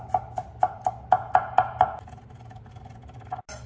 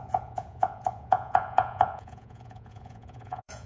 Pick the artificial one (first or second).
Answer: second